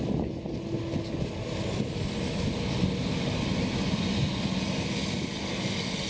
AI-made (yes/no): no